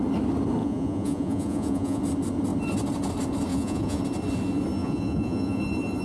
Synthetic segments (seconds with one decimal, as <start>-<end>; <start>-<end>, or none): 0.6-2.0; 3.5-4.0; 4.8-5.6